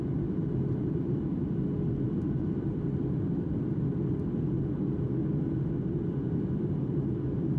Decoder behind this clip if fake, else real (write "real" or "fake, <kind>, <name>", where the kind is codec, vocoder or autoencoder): fake, vocoder, BigVGAN v2